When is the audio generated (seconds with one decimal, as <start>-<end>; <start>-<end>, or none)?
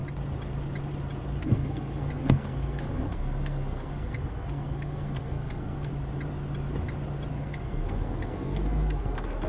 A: 1.4-5.9; 7.3-9.5